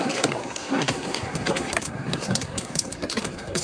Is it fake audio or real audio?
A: fake